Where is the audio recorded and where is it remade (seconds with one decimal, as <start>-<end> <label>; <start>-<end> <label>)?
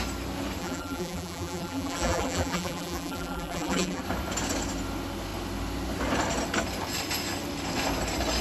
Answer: 0.0-0.6 recorded; 0.6-4.0 remade; 4.0-8.4 recorded